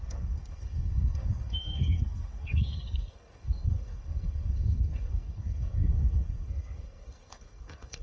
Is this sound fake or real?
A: fake